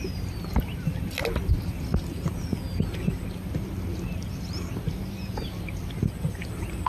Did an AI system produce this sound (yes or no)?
no